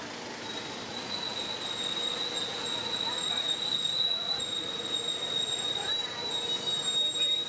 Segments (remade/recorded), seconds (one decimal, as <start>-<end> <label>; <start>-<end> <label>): 0.0-0.9 recorded; 0.9-1.4 remade; 1.4-2.5 recorded; 2.5-5.9 remade; 5.9-7.5 recorded